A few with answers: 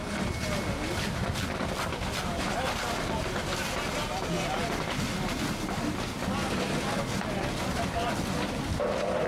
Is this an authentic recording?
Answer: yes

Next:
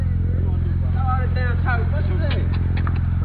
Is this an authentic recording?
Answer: yes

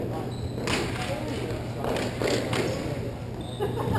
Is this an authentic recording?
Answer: yes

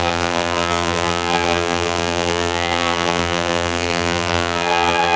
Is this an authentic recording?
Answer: no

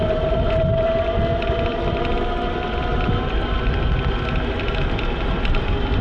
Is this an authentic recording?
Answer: yes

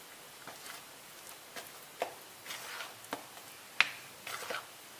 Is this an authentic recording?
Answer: yes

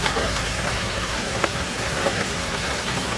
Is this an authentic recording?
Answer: no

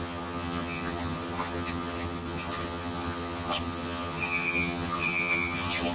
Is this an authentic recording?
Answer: no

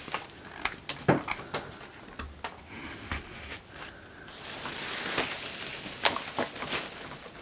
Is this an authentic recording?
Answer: yes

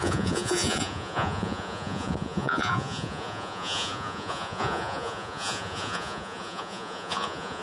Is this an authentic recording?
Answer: no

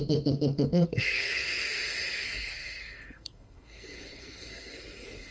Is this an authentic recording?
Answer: no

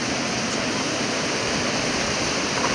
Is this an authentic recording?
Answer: yes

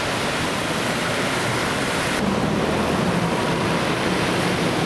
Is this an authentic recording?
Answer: yes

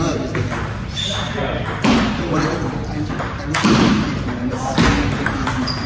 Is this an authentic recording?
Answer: yes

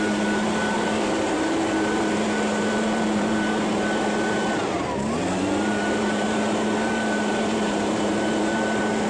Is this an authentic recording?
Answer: no